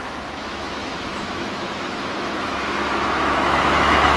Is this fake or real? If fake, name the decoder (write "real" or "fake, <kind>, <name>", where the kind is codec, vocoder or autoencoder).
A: fake, autoencoder, DAC-VAE